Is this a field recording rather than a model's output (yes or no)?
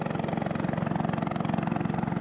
yes